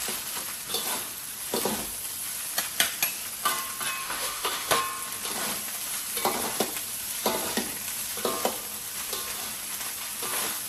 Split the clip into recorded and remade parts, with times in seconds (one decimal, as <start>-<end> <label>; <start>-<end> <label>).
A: 0.0-4.0 recorded; 4.0-4.8 remade; 4.8-10.7 recorded